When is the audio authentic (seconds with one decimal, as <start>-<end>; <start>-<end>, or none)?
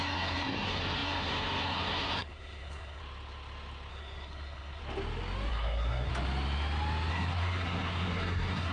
3.0-3.9; 4.8-5.5; 6.1-7.1